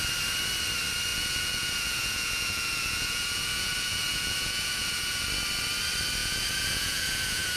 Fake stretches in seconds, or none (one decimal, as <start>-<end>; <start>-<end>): 1.1-5.3; 6.2-7.6